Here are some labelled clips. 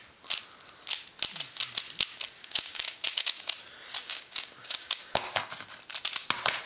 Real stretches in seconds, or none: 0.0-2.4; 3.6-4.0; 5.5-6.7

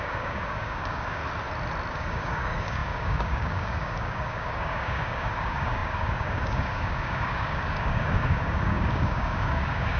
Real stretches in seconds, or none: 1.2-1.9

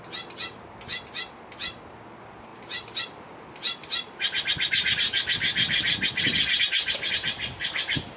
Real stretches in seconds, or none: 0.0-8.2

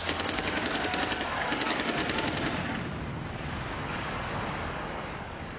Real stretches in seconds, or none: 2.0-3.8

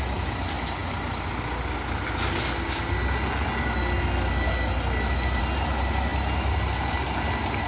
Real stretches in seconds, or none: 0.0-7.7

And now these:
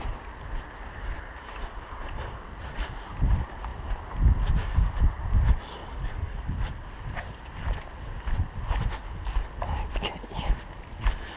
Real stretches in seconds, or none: 0.0-5.8; 6.5-11.4

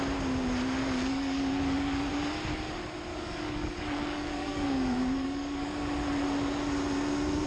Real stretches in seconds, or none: 0.0-0.8; 2.1-3.1; 5.7-7.5